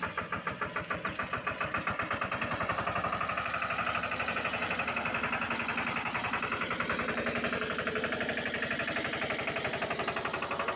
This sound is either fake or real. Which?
real